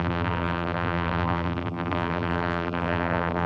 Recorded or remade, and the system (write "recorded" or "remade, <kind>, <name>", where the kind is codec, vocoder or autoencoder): remade, vocoder, BigVGAN v2